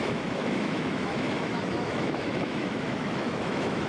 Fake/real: fake